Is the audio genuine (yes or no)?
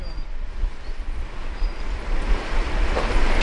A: yes